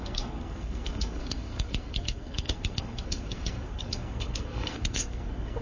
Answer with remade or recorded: remade